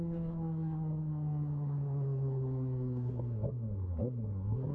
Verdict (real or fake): fake